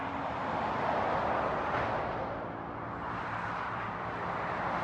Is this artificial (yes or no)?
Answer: no